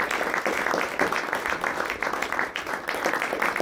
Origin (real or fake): real